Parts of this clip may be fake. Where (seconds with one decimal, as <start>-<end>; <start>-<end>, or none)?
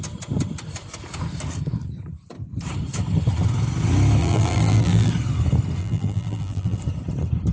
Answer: 4.2-5.1; 5.8-6.8